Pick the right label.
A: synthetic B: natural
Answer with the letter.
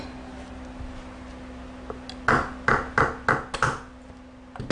B